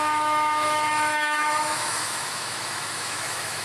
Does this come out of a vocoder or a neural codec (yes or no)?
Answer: yes